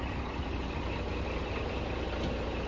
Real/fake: real